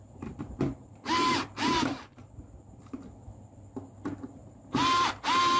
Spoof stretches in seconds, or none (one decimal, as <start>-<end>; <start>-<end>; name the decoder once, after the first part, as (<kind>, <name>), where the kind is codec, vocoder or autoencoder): 0.0-2.8 (vocoder, BigVGAN v2); 4.4-5.1